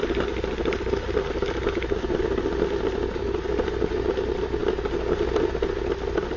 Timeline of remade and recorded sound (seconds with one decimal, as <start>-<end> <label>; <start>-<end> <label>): 0.0-6.4 recorded